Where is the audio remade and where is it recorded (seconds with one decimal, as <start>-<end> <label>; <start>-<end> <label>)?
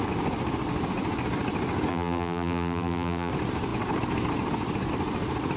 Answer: 0.0-1.9 recorded; 1.9-3.3 remade; 3.3-5.6 recorded